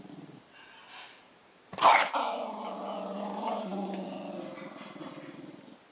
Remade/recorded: recorded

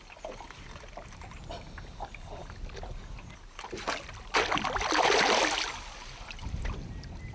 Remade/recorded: recorded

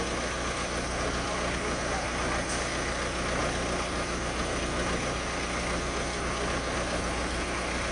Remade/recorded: recorded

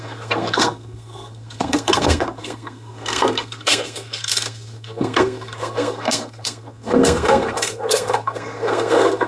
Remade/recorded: remade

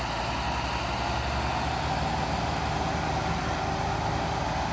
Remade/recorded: recorded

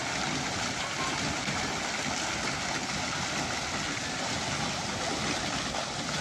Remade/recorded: recorded